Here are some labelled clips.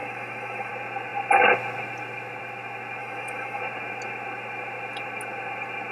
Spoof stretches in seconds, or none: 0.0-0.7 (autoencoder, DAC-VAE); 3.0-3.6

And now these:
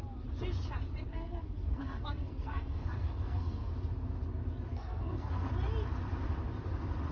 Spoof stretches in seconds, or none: 1.1-3.7 (codec, SNAC); 4.7-5.5